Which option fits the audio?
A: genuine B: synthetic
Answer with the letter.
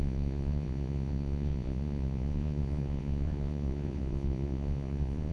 B